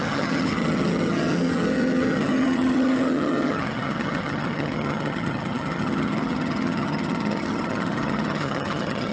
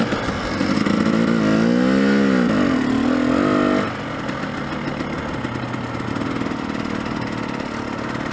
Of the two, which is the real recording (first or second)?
second